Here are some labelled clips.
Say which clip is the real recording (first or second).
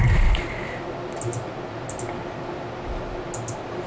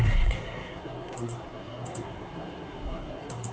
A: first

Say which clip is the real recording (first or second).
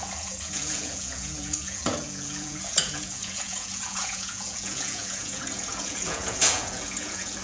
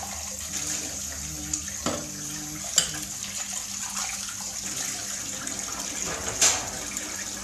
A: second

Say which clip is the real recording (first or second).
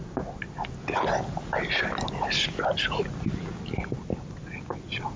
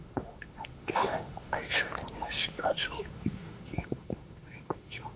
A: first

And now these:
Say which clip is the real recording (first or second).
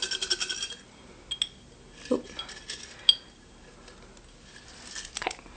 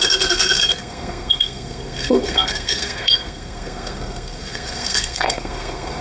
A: first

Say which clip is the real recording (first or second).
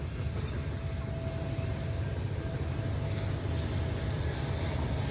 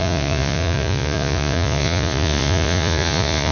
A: first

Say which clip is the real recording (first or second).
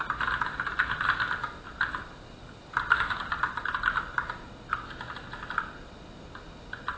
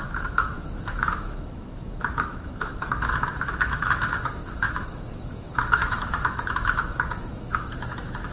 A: first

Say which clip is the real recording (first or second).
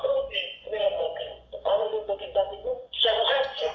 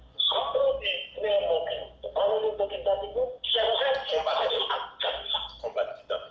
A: second